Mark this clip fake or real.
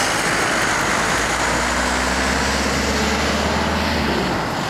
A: real